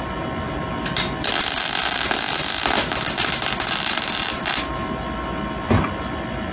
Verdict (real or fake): real